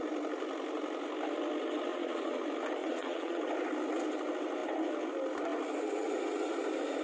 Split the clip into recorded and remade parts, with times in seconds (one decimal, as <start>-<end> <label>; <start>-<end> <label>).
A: 0.0-1.9 recorded; 1.9-2.4 remade; 2.4-2.8 recorded; 2.8-3.4 remade; 3.4-7.0 recorded